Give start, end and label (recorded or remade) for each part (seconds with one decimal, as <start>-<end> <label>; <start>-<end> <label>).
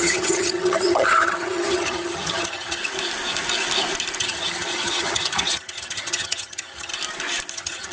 0.0-2.8 remade; 2.8-4.2 recorded; 4.2-6.9 remade; 6.9-7.5 recorded; 7.5-7.9 remade